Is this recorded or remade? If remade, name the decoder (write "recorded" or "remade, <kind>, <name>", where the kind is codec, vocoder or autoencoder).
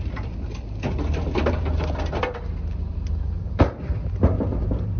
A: remade, vocoder, BigVGAN v2